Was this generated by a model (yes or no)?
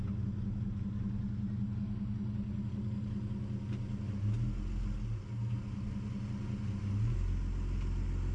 no